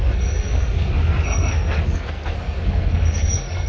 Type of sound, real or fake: fake